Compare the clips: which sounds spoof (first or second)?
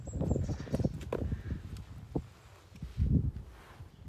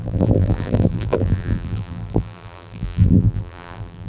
second